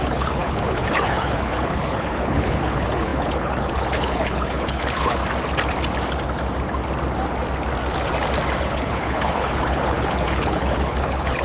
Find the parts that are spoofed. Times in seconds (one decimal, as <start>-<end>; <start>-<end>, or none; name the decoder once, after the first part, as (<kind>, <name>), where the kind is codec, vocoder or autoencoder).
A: 0.0-5.2 (codec, HILCodec); 8.6-11.4